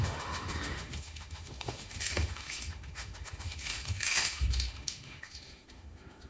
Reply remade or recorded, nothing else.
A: remade